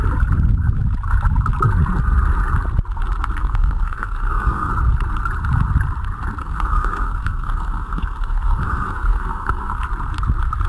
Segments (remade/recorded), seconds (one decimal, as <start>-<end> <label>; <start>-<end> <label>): 0.0-3.4 recorded; 3.4-4.7 remade; 4.7-6.4 recorded; 6.4-9.8 remade; 9.8-10.7 recorded